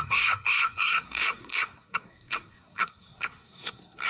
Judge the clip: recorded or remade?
remade